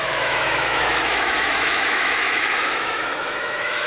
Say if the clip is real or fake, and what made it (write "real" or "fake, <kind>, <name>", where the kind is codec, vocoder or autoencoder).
fake, autoencoder, DAC-VAE